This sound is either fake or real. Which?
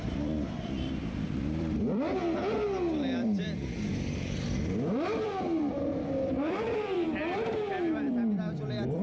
fake